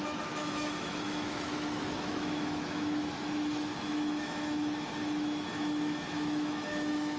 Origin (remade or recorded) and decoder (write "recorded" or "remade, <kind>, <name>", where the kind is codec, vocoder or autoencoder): remade, autoencoder, DAC-VAE